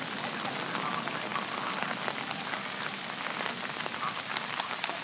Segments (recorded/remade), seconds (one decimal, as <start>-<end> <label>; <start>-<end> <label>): 0.0-5.0 recorded